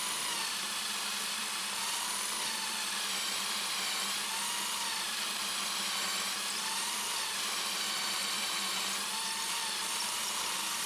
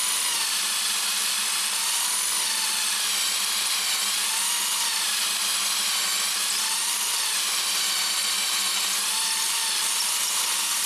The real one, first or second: second